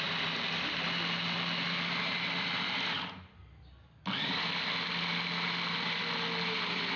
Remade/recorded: recorded